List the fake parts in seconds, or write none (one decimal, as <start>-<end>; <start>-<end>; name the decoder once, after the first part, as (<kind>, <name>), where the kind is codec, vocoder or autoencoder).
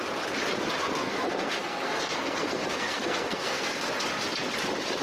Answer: 1.0-3.9 (codec, SNAC)